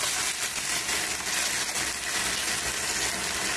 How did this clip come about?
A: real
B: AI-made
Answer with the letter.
A